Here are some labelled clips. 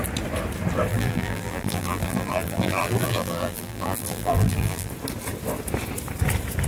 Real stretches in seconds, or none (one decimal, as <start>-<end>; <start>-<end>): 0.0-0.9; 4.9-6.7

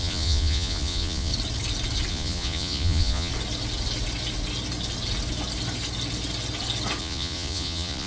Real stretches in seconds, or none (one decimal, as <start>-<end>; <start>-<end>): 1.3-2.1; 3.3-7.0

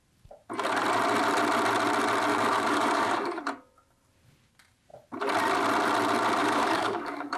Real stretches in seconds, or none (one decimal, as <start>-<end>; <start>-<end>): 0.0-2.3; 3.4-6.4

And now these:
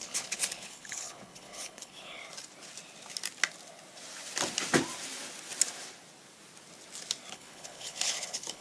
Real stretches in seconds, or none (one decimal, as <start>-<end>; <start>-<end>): 2.2-7.3